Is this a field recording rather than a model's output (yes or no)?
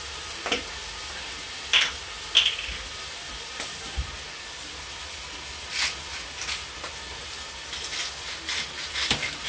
yes